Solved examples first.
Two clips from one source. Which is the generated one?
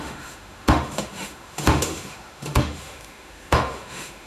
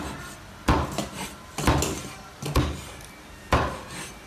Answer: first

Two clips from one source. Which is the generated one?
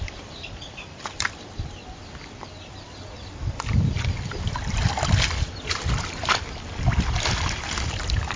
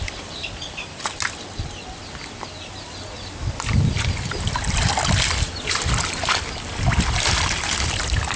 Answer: first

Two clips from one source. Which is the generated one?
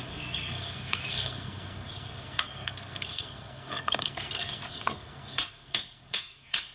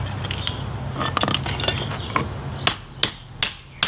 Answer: first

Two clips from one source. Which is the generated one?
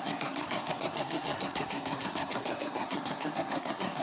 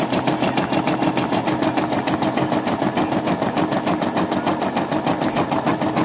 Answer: first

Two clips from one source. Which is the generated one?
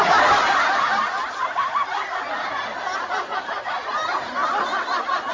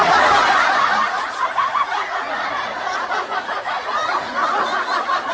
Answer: second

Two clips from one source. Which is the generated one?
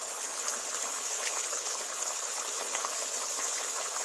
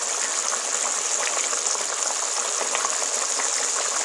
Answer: first